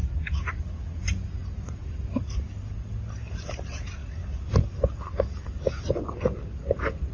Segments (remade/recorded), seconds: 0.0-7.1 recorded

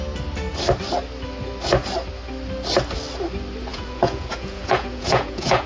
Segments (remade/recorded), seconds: 0.0-3.7 recorded; 3.7-5.7 remade